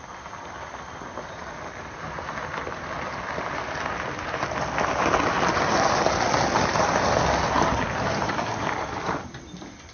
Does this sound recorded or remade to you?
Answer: recorded